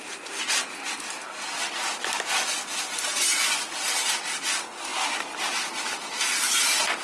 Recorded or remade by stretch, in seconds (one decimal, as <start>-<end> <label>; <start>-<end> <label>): 0.0-7.0 recorded